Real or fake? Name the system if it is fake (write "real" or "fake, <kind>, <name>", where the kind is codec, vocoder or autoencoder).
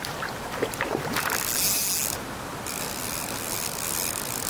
real